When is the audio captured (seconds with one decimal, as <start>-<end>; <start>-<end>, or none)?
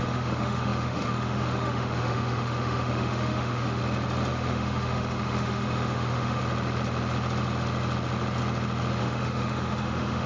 3.8-4.3; 6.4-9.0